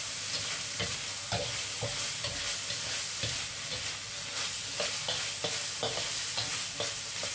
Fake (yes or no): no